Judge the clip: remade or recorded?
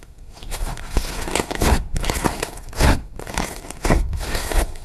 remade